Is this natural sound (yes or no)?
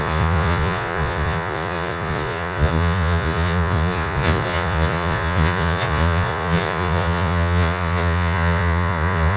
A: no